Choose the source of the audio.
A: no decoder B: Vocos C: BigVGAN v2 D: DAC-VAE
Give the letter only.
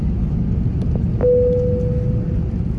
A